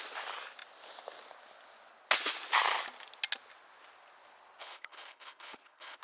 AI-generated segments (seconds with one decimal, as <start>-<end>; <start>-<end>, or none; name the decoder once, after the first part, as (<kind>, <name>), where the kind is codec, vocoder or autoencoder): 4.6-6.0 (codec, HILCodec)